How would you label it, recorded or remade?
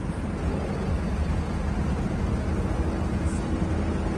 recorded